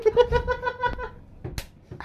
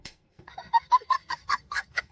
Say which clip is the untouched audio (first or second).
first